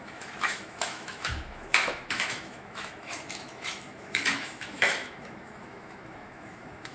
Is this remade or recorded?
remade